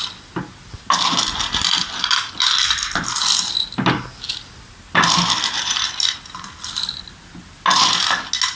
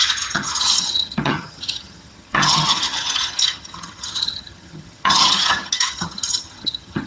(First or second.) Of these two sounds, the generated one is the second